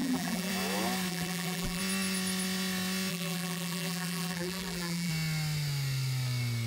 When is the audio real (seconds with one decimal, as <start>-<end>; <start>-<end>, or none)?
0.5-1.1; 1.8-3.1; 5.1-6.7